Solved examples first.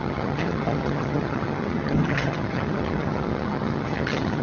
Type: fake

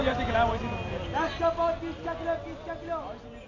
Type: real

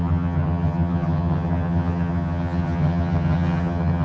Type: fake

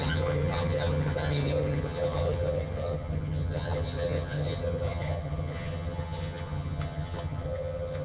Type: fake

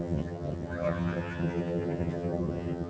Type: fake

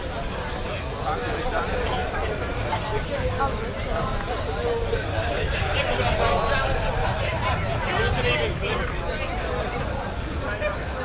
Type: real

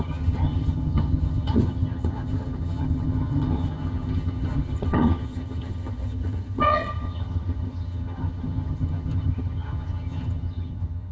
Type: fake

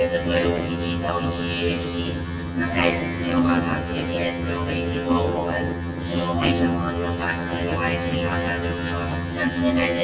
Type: fake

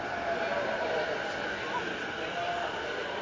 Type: real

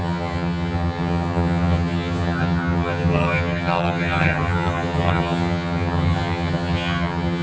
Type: fake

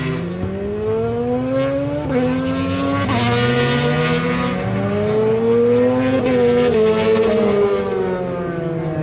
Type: real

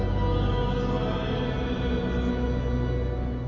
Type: real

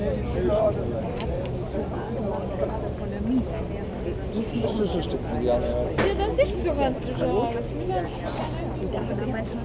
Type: real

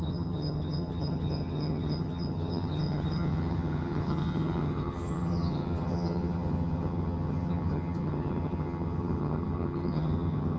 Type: fake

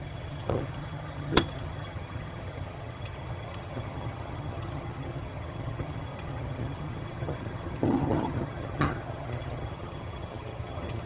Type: fake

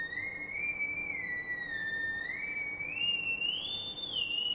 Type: real